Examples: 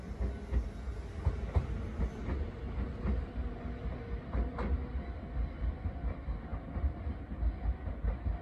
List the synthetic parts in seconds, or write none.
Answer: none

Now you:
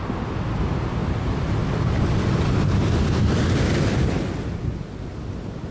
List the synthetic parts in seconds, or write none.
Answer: none

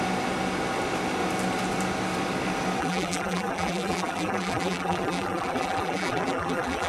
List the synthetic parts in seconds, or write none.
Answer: 2.8-6.9 (vocoder, BigVGAN v2)